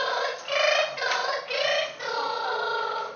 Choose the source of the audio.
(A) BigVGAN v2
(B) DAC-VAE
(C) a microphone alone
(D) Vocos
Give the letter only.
C